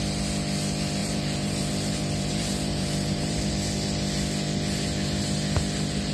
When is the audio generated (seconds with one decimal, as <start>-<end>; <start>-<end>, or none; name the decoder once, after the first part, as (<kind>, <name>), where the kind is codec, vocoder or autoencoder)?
1.0-3.5 (vocoder, BigVGAN v2)